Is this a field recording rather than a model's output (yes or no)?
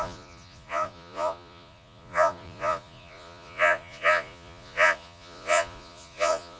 no